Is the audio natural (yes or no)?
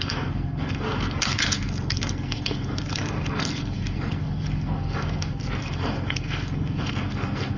no